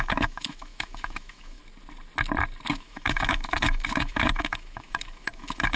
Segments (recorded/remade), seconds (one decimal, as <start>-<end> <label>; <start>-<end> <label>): 0.0-1.6 remade; 1.6-2.7 recorded; 2.7-5.8 remade